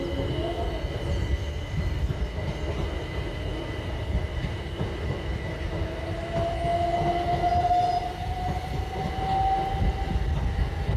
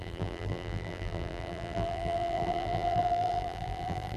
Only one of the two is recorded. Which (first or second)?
first